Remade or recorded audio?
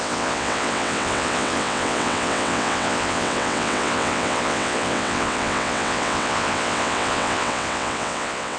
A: remade